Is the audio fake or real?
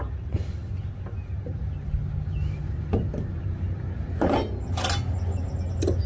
real